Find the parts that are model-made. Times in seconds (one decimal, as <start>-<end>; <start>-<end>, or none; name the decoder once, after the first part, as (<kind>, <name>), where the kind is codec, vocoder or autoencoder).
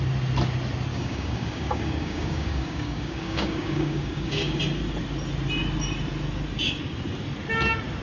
0.9-4.6 (codec, DAC)